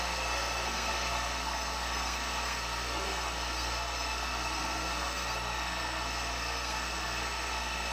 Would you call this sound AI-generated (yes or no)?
yes